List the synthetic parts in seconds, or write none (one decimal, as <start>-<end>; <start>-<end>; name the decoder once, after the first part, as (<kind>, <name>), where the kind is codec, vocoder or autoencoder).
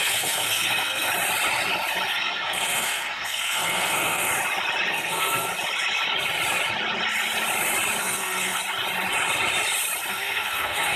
0.0-1.1 (codec, SNAC); 2.1-4.3; 4.9-5.5; 8.0-8.6; 10.1-11.0